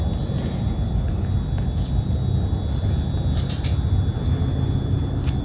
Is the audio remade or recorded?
recorded